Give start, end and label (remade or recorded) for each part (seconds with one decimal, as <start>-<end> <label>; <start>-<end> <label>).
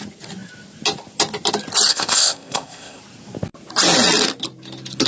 0.0-1.9 recorded; 1.9-3.0 remade; 3.0-5.1 recorded